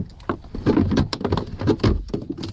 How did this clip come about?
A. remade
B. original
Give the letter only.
B